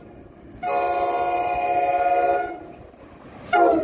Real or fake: real